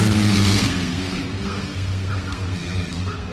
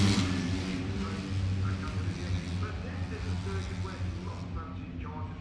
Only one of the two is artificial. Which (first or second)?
first